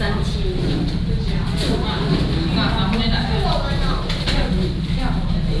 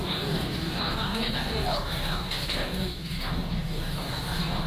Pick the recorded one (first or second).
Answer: first